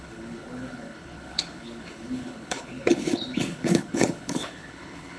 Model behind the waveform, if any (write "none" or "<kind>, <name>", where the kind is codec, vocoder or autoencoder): codec, HILCodec